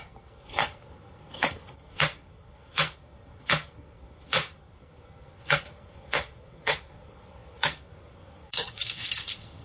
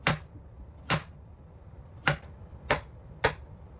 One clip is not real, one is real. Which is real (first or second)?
second